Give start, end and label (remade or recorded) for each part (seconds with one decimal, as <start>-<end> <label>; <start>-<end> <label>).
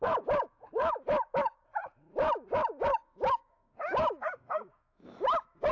0.0-5.7 remade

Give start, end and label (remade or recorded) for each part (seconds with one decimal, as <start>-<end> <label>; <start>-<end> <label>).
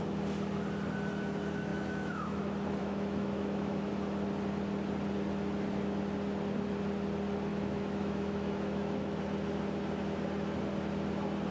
0.0-1.7 recorded; 1.7-2.4 remade; 2.4-2.8 recorded; 2.8-3.9 remade; 3.9-7.5 recorded; 7.5-9.2 remade; 9.2-11.5 recorded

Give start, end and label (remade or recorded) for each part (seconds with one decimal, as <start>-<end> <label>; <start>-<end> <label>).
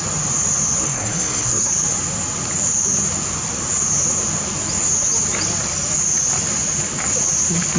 0.0-0.8 recorded; 0.8-1.7 remade; 1.7-7.8 recorded